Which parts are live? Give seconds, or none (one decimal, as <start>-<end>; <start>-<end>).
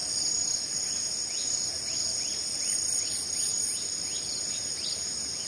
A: 0.0-3.5; 4.3-5.5